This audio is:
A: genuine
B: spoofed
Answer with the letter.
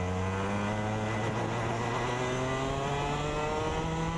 A